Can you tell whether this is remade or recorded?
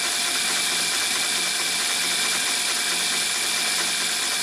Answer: recorded